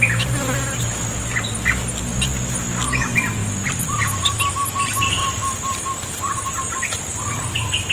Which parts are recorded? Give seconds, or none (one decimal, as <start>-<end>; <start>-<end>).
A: 0.0-7.9